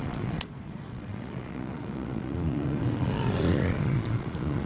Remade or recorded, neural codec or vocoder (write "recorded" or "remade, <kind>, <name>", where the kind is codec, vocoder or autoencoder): remade, vocoder, Vocos